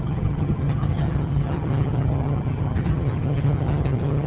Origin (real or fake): fake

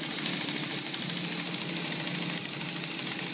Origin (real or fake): real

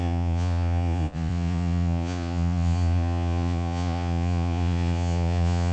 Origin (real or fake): fake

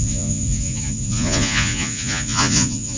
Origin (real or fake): fake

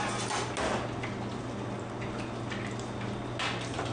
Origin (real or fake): real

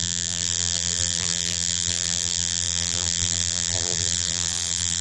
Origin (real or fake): fake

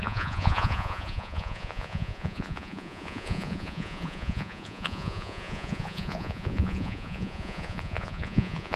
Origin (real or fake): fake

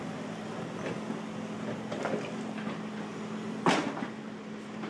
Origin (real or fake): real